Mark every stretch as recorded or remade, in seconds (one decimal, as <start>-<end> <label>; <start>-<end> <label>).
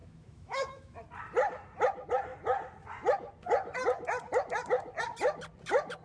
0.0-1.0 remade; 1.0-6.0 recorded